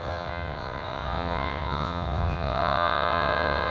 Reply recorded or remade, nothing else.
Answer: remade